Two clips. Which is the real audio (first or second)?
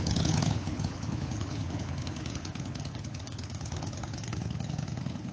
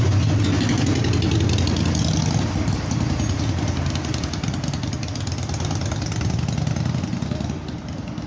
second